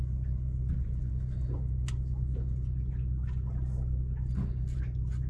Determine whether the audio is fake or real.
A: real